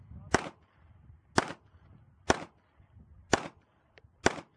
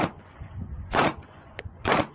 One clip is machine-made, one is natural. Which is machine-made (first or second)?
second